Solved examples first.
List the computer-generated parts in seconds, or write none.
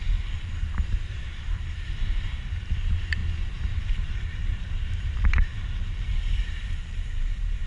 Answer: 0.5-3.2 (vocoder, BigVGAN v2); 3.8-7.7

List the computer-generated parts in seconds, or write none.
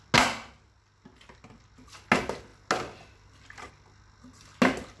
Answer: none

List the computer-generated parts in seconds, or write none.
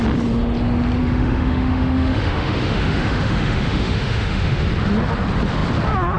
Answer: 1.0-4.7 (autoencoder, DAC-VAE)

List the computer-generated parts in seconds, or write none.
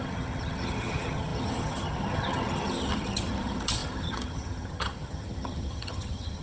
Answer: 0.0-6.4 (vocoder, HiFi-GAN)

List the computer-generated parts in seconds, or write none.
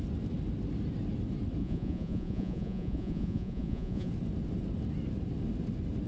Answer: 1.6-4.1 (vocoder, Vocos)